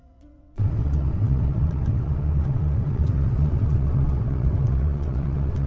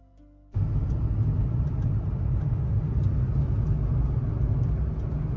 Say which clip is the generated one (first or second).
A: first